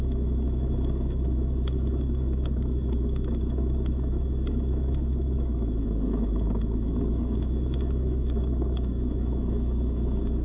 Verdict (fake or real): fake